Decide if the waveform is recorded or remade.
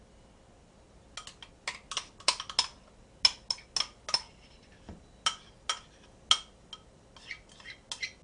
recorded